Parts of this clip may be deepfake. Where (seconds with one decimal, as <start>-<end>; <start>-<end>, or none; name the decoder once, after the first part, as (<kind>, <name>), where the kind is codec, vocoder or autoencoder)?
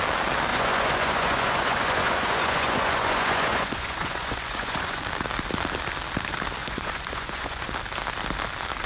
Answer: 0.5-5.0 (vocoder, Vocos); 6.6-7.7